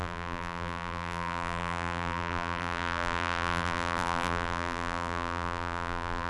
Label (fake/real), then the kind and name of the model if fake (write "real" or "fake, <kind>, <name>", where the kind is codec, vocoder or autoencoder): fake, vocoder, BigVGAN v2